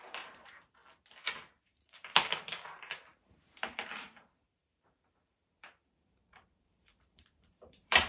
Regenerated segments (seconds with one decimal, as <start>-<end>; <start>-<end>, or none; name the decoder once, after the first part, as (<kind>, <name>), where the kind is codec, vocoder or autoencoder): 0.0-0.8 (vocoder, BigVGAN v2); 1.6-8.1

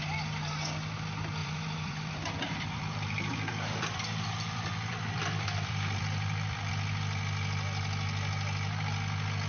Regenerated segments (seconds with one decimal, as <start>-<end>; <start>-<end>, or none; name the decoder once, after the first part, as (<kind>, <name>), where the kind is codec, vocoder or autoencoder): 1.4-6.7 (vocoder, BigVGAN v2)

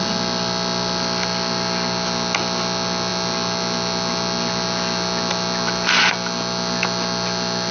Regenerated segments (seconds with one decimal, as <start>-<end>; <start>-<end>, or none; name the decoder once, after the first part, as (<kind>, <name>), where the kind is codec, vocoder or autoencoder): none

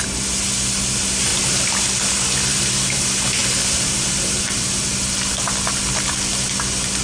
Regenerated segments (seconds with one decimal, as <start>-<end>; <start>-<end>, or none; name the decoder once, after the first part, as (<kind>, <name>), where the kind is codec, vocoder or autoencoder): 1.3-1.8 (vocoder, BigVGAN v2); 3.4-4.8

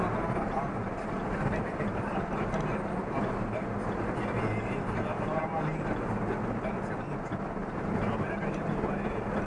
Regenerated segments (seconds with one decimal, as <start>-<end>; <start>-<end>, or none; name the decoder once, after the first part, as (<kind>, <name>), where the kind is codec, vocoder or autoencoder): 7.6-9.0 (vocoder, BigVGAN v2)

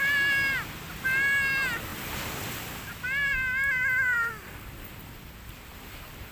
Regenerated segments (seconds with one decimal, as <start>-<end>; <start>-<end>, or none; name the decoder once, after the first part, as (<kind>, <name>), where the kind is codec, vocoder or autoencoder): 3.3-4.3 (vocoder, BigVGAN v2)